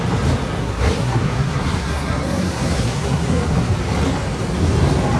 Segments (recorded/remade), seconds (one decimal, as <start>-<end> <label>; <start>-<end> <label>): 0.0-0.6 recorded; 0.6-3.7 remade; 3.7-5.2 recorded